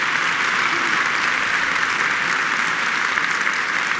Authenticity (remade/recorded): recorded